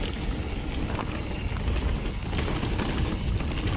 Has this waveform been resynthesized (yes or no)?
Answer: no